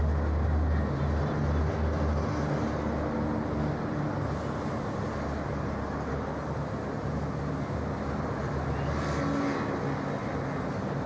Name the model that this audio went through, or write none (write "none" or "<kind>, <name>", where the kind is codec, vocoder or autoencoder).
none